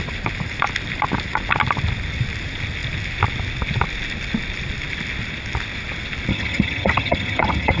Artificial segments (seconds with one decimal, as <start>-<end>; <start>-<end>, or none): 6.3-7.8

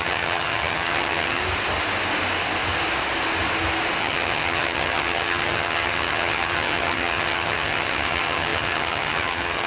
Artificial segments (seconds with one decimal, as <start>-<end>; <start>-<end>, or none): 0.0-1.4; 4.0-9.7

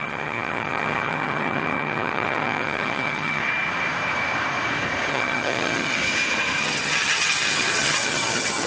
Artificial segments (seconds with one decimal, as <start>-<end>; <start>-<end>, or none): 0.0-3.4; 5.1-6.0; 6.6-8.7

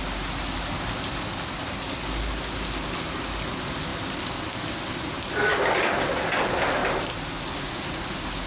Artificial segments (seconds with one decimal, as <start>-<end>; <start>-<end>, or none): none

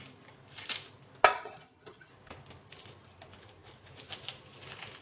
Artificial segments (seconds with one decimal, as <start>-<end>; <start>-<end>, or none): 1.3-2.1